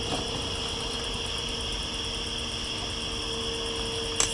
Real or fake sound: real